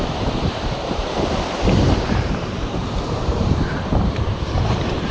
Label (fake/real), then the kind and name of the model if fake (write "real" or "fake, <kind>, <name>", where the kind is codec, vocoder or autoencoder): fake, vocoder, BigVGAN v2